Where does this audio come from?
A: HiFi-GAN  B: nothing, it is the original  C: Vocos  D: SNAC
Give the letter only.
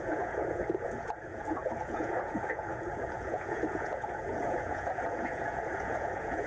C